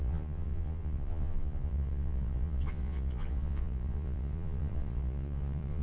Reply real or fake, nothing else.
fake